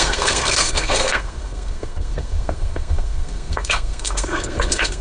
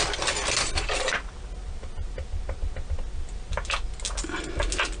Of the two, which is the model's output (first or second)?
first